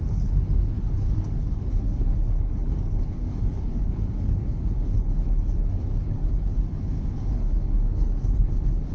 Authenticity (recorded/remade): remade